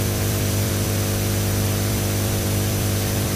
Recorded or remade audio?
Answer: remade